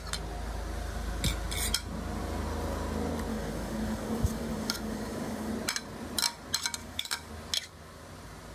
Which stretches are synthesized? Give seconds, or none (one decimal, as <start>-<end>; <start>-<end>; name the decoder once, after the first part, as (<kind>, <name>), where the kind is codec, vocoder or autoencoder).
3.3-5.5 (codec, DAC); 6.8-7.3